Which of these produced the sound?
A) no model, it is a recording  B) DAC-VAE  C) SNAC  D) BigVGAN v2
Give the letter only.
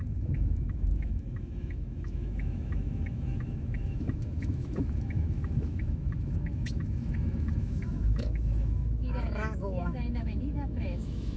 B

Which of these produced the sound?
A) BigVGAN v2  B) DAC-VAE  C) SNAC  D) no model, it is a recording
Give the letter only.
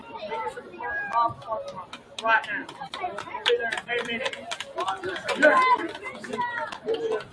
D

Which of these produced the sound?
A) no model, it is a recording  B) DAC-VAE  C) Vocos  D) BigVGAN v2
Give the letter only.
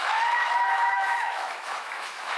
B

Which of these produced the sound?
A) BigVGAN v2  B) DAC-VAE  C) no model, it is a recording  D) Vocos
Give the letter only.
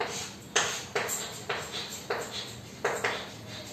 C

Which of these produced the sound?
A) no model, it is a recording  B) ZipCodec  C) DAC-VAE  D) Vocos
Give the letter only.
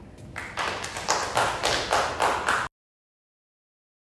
A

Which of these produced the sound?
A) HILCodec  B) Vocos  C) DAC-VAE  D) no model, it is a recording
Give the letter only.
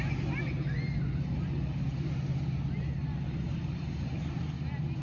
D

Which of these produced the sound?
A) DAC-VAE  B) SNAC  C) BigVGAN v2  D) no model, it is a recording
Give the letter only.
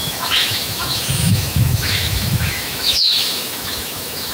A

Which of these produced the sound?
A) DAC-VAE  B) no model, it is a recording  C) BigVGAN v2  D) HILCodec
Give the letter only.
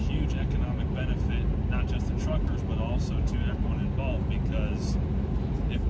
B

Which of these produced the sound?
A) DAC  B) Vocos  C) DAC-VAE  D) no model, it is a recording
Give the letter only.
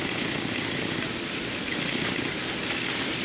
D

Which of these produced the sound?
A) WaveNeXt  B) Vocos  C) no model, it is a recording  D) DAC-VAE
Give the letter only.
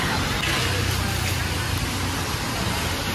C